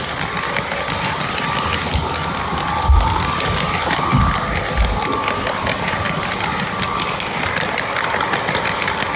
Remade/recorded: recorded